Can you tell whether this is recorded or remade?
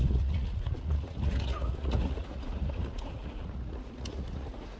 remade